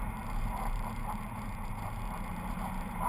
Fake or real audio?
fake